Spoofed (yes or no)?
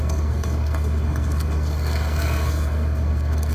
yes